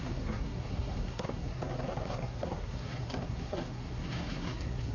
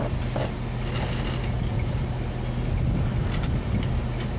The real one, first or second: second